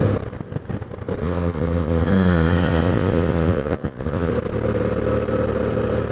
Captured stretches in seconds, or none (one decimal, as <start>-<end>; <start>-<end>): 0.0-1.2; 4.3-6.1